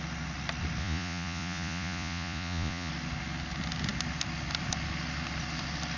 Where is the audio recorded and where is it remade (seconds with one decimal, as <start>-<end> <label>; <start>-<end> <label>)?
0.0-0.8 recorded; 0.8-2.9 remade; 2.9-6.0 recorded